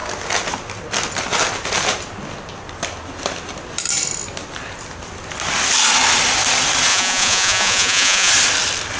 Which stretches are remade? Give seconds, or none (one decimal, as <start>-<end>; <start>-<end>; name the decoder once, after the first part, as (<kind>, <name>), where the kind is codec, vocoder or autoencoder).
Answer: 6.9-8.3 (vocoder, Vocos)